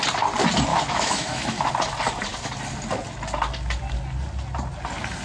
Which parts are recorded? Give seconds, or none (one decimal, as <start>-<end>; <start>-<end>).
0.0-0.7; 1.7-5.2